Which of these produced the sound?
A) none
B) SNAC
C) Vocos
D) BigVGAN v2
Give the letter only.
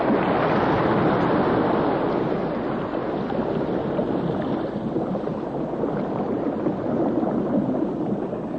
A